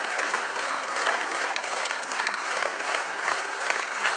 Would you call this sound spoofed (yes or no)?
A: yes